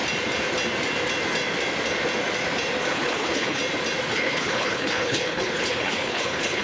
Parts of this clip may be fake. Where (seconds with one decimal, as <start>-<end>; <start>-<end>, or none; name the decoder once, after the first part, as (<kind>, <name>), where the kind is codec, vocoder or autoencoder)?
2.9-3.6 (codec, HILCodec); 4.1-6.6